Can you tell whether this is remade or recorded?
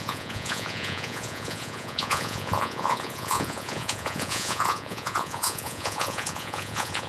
remade